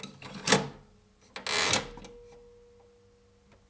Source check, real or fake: real